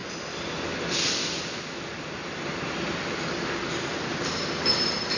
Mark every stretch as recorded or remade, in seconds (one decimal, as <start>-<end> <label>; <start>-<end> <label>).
0.0-5.2 recorded